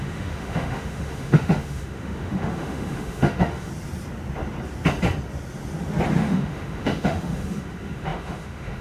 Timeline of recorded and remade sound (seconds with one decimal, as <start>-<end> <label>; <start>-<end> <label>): 0.0-3.7 remade; 3.7-6.2 recorded; 6.2-8.8 remade